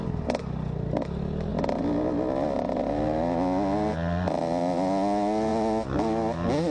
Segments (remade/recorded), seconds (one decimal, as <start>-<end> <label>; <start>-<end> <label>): 0.0-6.7 recorded